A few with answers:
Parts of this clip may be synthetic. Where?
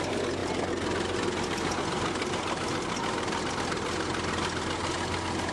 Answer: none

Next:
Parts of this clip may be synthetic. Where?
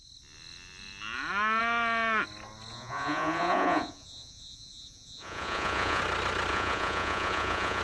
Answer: 2.7-6.0 (vocoder, Vocos); 6.5-7.8